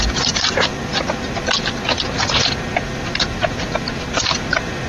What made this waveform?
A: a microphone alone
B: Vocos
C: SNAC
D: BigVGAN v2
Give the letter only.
D